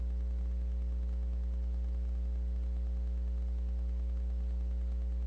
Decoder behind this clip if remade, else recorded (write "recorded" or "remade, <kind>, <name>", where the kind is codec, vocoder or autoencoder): recorded